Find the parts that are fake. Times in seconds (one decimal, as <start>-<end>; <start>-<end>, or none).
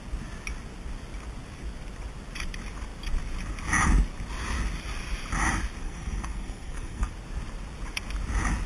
5.8-7.1